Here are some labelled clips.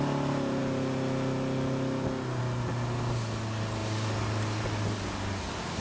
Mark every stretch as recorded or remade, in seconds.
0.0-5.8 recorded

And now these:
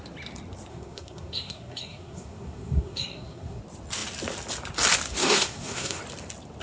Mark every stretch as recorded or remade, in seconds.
0.0-0.7 recorded; 0.7-3.6 remade; 3.6-5.2 recorded; 5.2-6.0 remade; 6.0-6.6 recorded

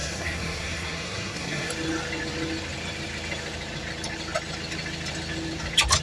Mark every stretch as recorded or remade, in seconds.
0.0-1.7 remade; 1.7-6.0 recorded

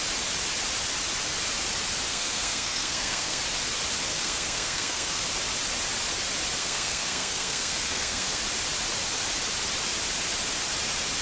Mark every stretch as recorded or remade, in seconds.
0.0-2.1 recorded; 2.1-3.4 remade; 3.4-4.1 recorded; 4.1-5.2 remade; 5.2-6.6 recorded; 6.6-8.4 remade; 8.4-11.2 recorded

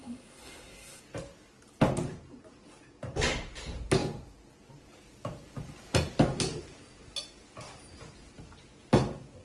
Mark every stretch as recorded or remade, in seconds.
0.0-1.0 remade; 1.0-9.4 recorded

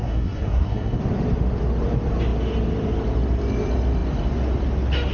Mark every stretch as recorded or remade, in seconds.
0.0-1.0 remade; 1.0-5.1 recorded

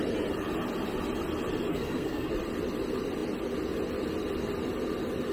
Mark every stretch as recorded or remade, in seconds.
0.0-1.7 recorded; 1.7-2.3 remade; 2.3-5.3 recorded